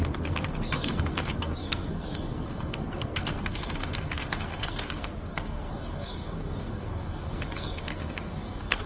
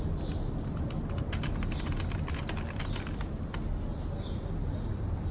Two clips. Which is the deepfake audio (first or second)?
first